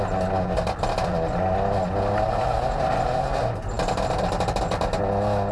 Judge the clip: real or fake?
real